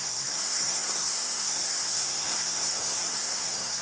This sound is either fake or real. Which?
fake